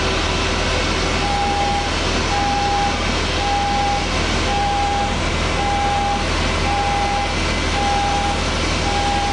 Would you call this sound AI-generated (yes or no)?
no